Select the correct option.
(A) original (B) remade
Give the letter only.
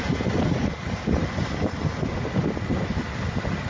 A